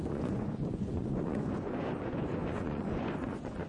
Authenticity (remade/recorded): remade